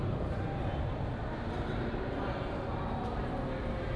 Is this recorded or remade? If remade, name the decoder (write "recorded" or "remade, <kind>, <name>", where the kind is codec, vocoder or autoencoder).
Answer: recorded